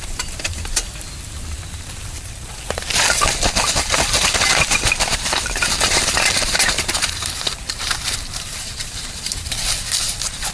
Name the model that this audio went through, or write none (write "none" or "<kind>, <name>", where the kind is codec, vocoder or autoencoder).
vocoder, BigVGAN v2